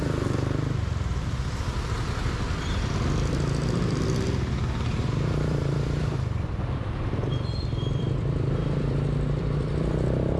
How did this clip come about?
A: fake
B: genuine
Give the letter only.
A